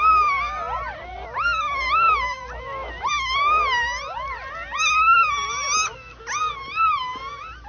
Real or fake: real